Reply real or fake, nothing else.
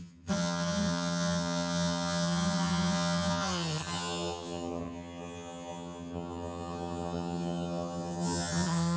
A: fake